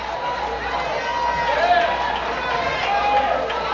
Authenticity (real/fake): real